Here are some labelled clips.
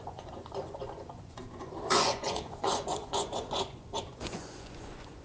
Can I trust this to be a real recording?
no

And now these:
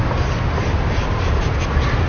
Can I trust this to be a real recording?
yes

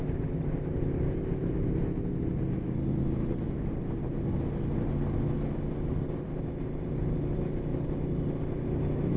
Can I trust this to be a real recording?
yes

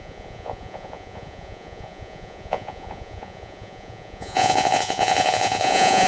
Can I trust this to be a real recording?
no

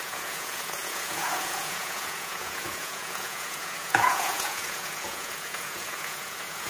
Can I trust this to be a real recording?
no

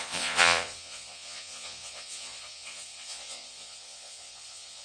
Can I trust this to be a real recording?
no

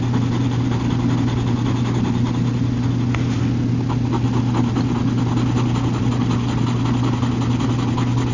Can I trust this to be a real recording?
yes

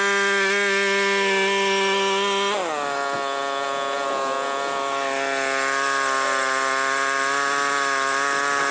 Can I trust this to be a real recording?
yes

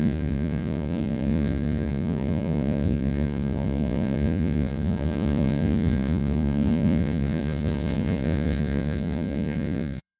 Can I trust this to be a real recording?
no